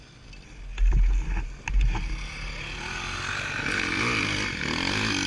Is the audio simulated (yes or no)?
no